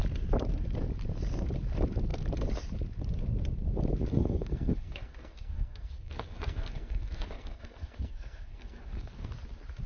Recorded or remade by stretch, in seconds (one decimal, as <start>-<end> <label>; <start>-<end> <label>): 0.0-4.1 recorded; 4.1-9.3 remade; 9.3-9.9 recorded